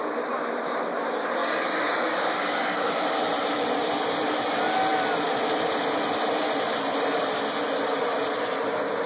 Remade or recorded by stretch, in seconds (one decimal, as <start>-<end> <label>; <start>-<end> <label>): 0.0-1.4 recorded; 1.4-3.2 remade; 3.2-9.1 recorded